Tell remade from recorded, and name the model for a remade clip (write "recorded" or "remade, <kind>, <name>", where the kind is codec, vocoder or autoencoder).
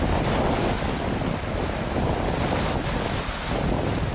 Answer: recorded